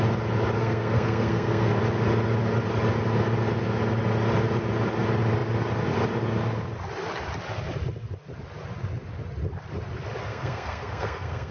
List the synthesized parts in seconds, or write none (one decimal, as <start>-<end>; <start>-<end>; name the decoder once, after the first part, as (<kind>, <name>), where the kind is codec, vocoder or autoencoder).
0.6-1.7 (codec, SNAC); 10.2-11.5